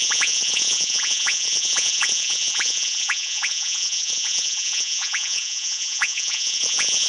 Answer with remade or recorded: remade